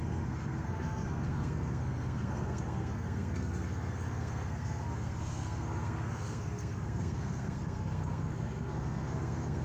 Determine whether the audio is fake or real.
fake